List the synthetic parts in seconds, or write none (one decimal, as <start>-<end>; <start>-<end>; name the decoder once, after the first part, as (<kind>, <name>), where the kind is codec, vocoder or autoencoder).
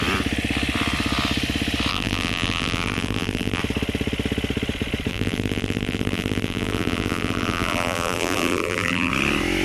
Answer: 1.9-3.6 (vocoder, BigVGAN v2); 5.1-9.1